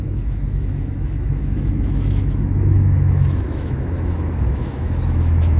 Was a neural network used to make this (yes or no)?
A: yes